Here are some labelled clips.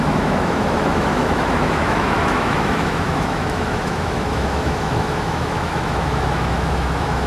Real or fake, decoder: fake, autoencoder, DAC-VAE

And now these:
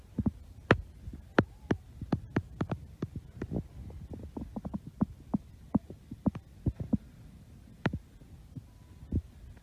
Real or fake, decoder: real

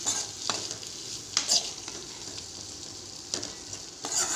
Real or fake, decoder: real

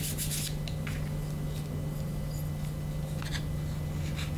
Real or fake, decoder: real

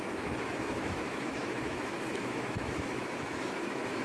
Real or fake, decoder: fake, autoencoder, DAC-VAE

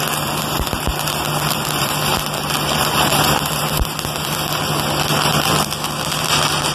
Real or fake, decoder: fake, vocoder, BigVGAN v2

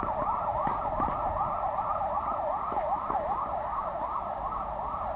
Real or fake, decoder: real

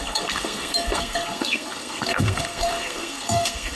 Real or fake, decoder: fake, codec, SNAC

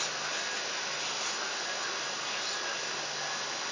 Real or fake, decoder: real